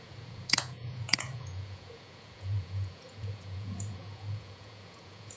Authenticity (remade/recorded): remade